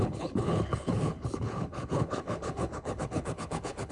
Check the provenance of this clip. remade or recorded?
remade